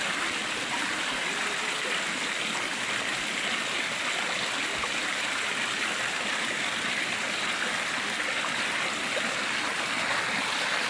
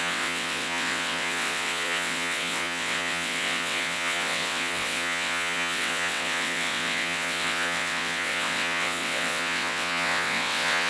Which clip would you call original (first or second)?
first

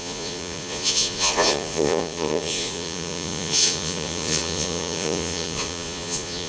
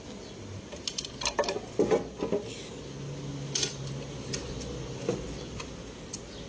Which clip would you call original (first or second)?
second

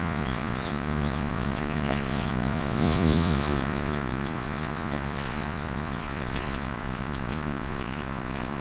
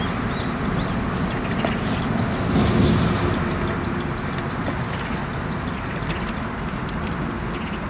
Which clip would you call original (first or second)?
second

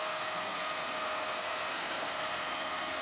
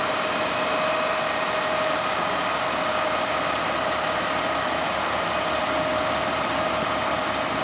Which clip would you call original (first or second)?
second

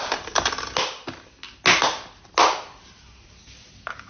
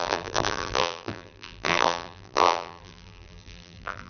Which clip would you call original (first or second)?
first